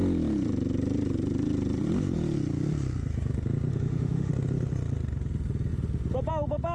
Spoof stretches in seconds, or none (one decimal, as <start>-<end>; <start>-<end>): 3.7-4.3